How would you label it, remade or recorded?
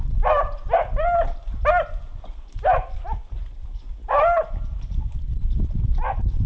recorded